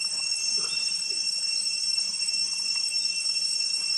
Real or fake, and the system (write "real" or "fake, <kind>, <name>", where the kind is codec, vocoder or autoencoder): real